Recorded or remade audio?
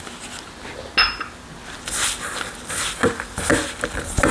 recorded